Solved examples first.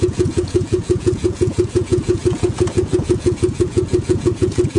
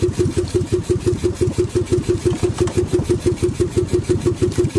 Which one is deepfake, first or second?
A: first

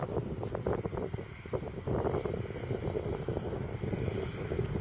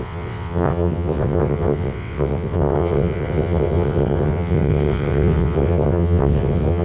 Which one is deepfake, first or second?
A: second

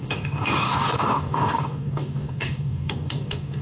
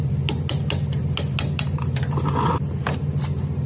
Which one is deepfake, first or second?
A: first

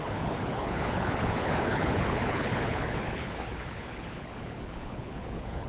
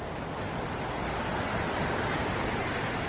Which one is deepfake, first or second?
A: first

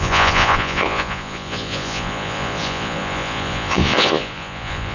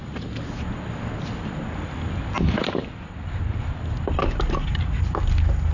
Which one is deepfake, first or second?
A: first